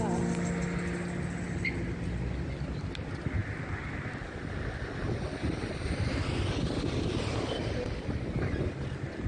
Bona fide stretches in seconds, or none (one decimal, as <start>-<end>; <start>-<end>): 0.0-9.3